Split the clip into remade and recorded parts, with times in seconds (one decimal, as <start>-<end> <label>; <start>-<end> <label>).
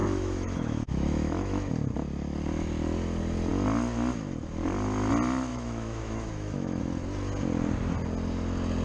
0.0-1.7 remade; 1.7-5.5 recorded; 5.5-6.8 remade; 6.8-8.8 recorded